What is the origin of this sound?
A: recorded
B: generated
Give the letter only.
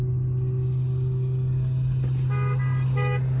A